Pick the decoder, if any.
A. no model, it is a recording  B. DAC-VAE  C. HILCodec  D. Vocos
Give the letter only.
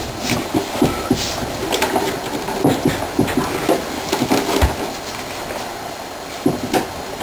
A